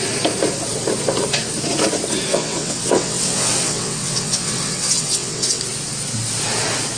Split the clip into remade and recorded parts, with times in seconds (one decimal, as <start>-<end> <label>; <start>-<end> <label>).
0.0-2.3 recorded; 2.3-5.6 remade; 5.6-7.0 recorded